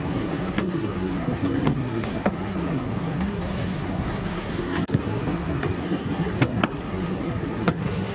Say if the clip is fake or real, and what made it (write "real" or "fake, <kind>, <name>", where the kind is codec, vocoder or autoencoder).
fake, codec, SNAC